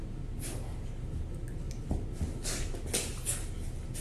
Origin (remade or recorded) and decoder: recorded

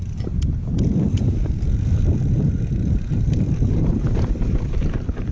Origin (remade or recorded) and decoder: remade, vocoder, BigVGAN v2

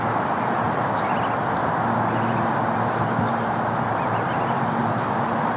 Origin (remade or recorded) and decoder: recorded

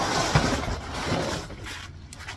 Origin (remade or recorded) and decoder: recorded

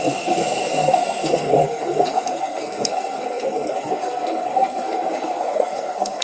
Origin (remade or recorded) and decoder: remade, codec, SNAC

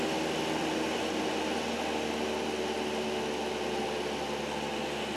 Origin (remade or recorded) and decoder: recorded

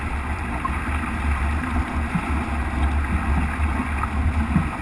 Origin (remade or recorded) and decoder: recorded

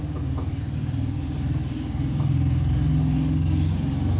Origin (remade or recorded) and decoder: recorded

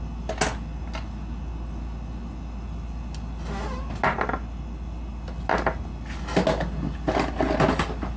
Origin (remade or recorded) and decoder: recorded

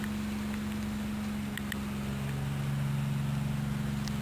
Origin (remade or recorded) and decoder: recorded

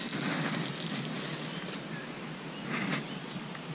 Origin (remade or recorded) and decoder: recorded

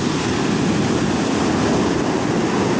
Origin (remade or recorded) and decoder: recorded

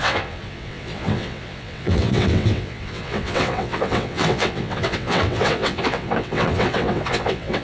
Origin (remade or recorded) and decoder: remade, vocoder, WaveNeXt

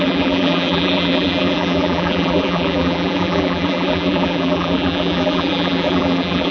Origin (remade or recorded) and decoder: remade, vocoder, BigVGAN v2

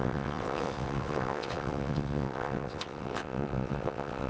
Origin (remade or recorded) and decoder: remade, vocoder, WaveNeXt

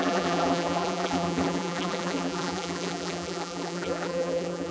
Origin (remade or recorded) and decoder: remade, vocoder, BigVGAN v2